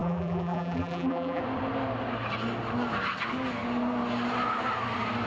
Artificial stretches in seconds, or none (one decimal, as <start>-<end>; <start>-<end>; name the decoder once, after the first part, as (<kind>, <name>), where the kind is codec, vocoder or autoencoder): 0.0-1.4 (vocoder, BigVGAN v2)